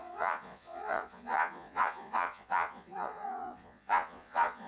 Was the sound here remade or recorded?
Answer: remade